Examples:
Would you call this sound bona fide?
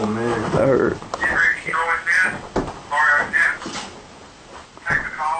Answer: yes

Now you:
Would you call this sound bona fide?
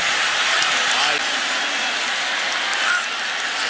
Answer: yes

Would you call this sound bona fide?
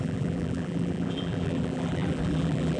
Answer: no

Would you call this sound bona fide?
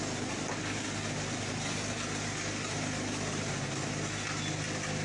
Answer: yes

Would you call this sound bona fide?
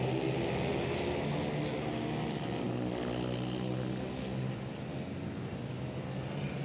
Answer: yes